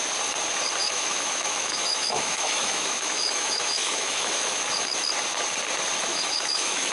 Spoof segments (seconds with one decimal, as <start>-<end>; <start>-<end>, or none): 0.8-4.9; 6.1-6.9